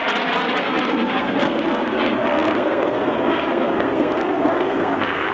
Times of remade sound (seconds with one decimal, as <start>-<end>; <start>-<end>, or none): 0.6-5.3